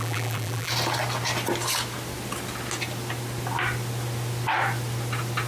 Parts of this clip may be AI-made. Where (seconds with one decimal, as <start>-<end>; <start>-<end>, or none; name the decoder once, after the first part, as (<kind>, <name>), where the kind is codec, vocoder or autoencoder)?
0.0-0.7 (vocoder, BigVGAN v2)